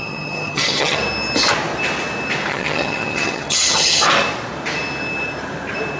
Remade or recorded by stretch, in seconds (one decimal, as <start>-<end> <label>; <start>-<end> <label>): 0.0-1.0 remade; 1.0-2.5 recorded; 2.5-4.0 remade; 4.0-6.0 recorded

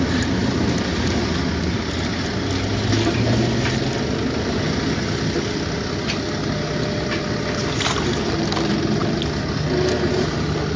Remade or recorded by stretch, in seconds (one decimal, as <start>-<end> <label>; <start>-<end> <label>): 0.0-10.8 recorded

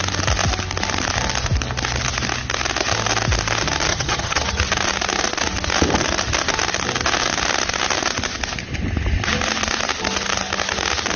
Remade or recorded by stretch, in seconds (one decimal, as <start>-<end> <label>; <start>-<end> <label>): 0.0-3.9 recorded; 3.9-4.6 remade; 4.6-11.2 recorded